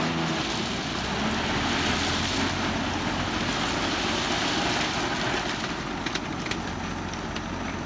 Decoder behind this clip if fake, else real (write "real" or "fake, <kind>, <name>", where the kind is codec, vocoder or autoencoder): real